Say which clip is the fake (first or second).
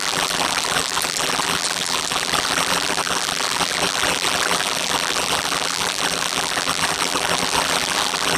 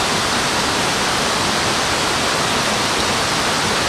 first